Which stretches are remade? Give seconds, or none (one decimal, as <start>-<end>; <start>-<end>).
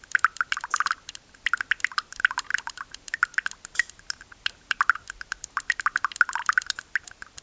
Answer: none